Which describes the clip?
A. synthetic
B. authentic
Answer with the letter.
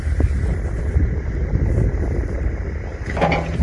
B